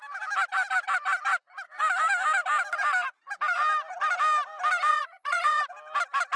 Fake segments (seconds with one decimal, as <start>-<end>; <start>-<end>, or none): 4.9-5.6